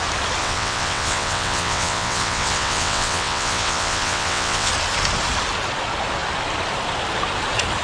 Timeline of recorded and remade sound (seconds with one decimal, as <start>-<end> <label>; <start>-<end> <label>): 0.0-0.4 recorded; 0.4-4.7 remade; 4.7-7.8 recorded